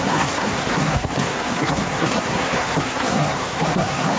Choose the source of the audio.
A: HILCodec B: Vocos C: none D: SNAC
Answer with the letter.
D